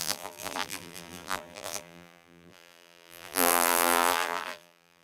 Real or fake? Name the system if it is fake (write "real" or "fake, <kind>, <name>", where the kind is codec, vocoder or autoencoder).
fake, vocoder, BigVGAN v2